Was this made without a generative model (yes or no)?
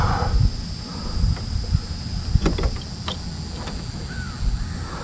yes